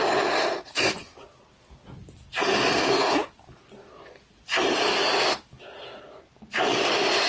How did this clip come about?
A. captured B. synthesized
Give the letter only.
A